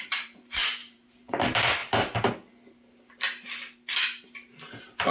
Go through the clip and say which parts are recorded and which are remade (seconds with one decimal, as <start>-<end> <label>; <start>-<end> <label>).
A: 0.0-1.8 remade; 1.8-5.1 recorded